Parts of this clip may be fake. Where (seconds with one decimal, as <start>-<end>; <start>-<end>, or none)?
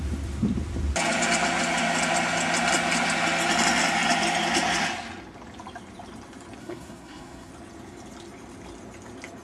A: 6.6-7.5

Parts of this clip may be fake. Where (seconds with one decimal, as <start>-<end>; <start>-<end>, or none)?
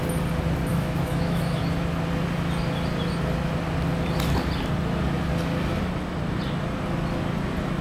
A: 0.7-1.6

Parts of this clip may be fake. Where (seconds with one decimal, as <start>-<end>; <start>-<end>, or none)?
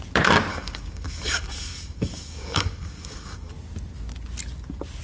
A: 0.5-3.5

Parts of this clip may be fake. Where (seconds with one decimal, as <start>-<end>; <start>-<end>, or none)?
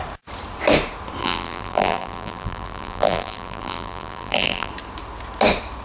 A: 1.2-4.7